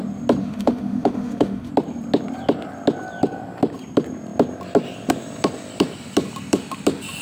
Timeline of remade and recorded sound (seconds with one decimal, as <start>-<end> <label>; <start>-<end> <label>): 0.0-0.4 recorded; 0.4-1.7 remade; 1.7-7.2 recorded